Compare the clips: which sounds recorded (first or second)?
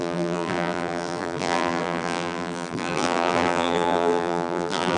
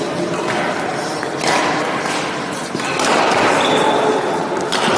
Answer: second